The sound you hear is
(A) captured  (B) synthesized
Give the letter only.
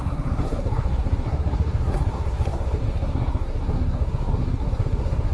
B